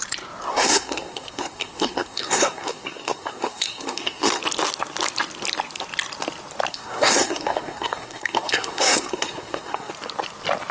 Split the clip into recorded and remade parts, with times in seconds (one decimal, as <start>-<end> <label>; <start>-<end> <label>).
0.0-0.5 recorded; 0.5-4.4 remade; 4.4-6.7 recorded; 6.7-9.9 remade; 9.9-10.7 recorded